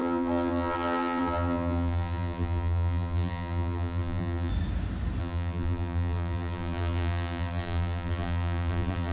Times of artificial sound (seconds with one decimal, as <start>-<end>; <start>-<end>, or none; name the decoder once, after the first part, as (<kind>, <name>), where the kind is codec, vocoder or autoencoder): 0.0-4.5 (vocoder, BigVGAN v2); 5.2-9.1